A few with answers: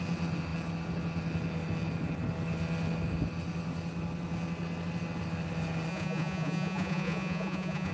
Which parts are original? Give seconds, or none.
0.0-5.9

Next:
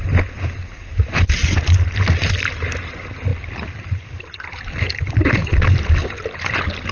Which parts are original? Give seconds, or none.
0.0-0.8; 1.6-3.3; 6.4-6.9

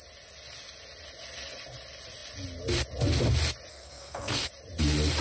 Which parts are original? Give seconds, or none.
0.0-3.7; 4.5-5.2

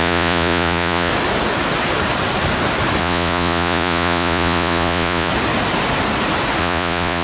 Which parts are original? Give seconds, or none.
1.1-3.0; 5.3-6.6

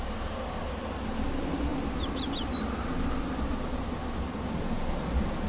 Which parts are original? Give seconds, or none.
0.0-5.5

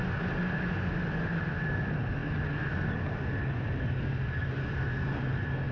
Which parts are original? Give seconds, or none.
0.0-5.7